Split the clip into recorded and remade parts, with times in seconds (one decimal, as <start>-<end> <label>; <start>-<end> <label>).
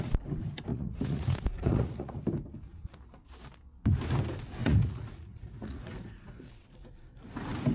0.0-0.7 recorded; 0.7-2.1 remade; 2.1-4.6 recorded; 4.6-6.5 remade; 6.5-7.7 recorded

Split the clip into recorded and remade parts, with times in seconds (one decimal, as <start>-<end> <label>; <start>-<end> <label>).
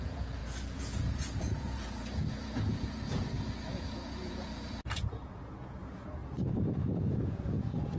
0.0-6.2 remade; 6.2-7.1 recorded; 7.1-8.0 remade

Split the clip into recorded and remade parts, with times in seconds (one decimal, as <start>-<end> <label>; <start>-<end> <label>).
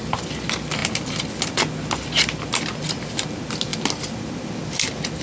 0.0-5.2 recorded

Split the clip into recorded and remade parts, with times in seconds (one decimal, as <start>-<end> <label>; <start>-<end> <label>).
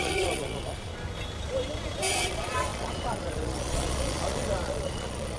0.0-0.9 remade; 0.9-2.1 recorded; 2.1-5.4 remade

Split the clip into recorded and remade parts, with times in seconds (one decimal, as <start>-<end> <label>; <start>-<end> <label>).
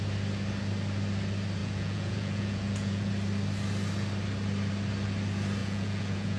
0.0-1.6 recorded; 1.6-3.1 remade; 3.1-5.6 recorded; 5.6-6.4 remade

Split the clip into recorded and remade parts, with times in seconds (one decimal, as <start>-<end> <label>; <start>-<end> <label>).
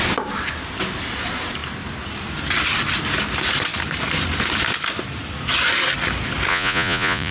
0.0-6.5 recorded; 6.5-7.3 remade